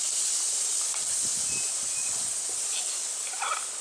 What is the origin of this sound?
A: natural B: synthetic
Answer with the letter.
A